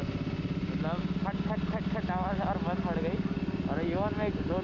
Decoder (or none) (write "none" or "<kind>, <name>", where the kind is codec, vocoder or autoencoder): none